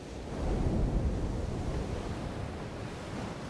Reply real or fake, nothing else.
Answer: real